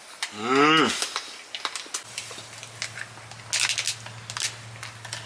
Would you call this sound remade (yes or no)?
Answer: no